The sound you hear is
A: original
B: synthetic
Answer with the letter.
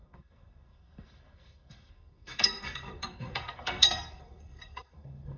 B